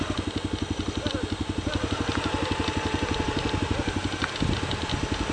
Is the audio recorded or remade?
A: recorded